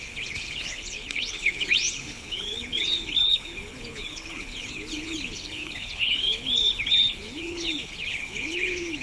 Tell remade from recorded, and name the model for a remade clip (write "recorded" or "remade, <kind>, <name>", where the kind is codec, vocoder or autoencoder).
remade, codec, HILCodec